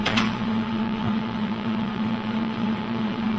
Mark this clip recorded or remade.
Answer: remade